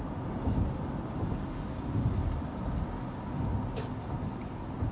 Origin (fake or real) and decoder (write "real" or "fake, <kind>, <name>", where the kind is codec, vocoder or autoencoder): real